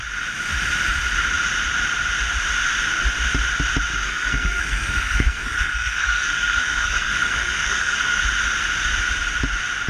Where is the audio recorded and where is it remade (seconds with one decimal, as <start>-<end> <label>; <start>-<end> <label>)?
0.0-3.9 recorded; 3.9-8.2 remade; 8.2-9.9 recorded